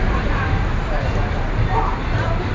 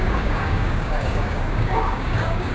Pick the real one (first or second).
first